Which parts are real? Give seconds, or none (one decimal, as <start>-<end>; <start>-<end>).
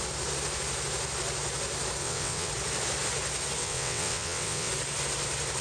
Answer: 0.0-2.0; 2.5-3.6; 4.7-5.6